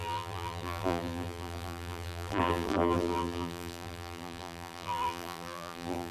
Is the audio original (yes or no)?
no